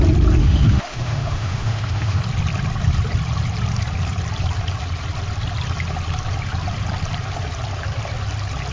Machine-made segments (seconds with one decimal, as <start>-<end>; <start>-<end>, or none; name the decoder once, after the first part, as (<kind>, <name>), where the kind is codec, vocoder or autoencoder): 0.4-2.2 (autoencoder, DAC-VAE)